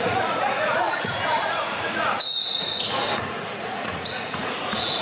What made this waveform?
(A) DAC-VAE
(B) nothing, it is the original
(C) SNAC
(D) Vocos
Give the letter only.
D